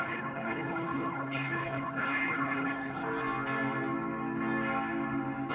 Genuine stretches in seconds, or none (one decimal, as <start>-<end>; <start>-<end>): 3.0-5.5